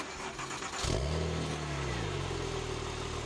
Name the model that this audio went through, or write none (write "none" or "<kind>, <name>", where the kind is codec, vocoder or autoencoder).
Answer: none